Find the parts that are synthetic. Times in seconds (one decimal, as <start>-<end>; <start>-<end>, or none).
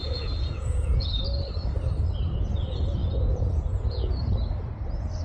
0.0-1.2; 3.0-4.1